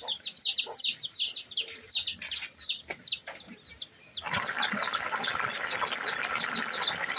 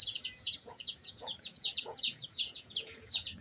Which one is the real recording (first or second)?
first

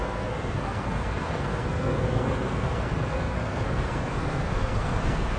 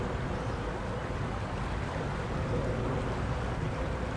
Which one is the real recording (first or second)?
second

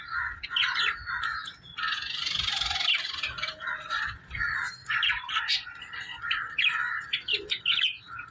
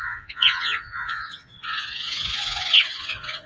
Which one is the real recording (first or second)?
first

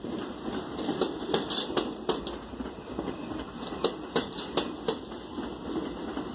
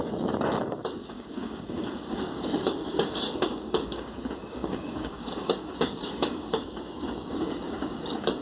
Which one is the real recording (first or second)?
first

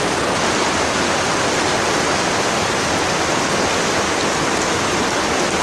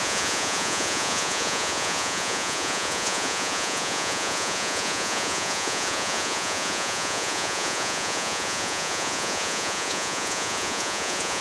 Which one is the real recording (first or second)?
first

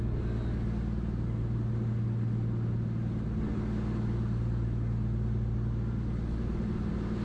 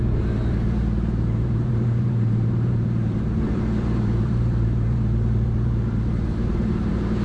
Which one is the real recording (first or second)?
first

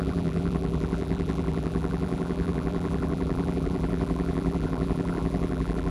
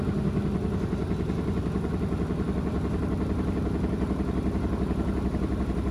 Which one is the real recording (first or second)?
second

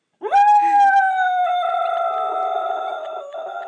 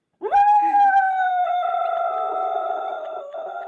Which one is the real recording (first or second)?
first